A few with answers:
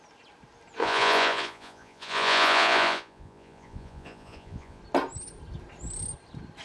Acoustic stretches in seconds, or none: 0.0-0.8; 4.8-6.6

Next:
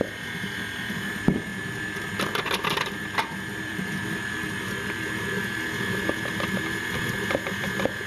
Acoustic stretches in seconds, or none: 0.0-8.1